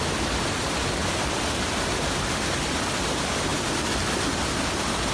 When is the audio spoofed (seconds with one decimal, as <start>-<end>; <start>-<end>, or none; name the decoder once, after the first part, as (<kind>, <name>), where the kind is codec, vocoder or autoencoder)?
none